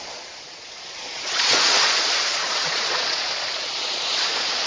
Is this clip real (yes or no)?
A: no